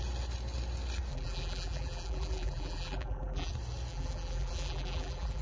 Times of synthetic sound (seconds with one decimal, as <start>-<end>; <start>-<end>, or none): 1.1-3.5; 3.9-5.4